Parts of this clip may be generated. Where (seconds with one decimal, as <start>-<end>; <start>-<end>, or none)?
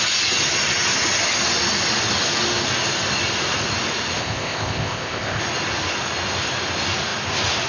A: 4.2-5.4